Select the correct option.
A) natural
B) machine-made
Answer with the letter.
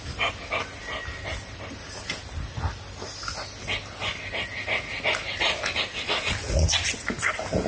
A